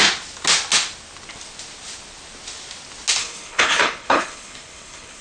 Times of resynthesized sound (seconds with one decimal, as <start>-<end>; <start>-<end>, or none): 3.2-5.2